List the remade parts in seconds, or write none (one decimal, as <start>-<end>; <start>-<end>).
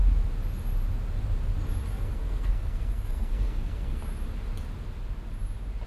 1.9-4.0